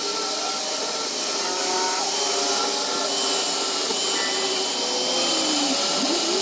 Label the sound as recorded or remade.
recorded